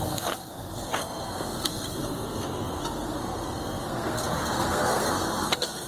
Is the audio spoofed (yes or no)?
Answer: yes